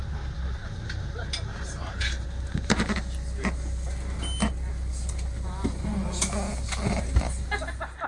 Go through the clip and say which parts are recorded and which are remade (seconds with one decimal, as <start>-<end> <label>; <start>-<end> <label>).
0.0-0.6 recorded; 0.6-2.8 remade; 2.8-8.1 recorded